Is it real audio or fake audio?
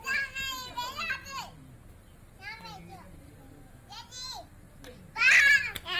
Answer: real